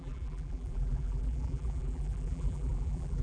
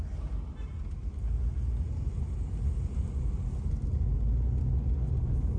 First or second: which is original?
second